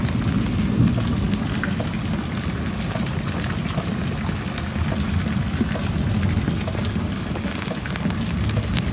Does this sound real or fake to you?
real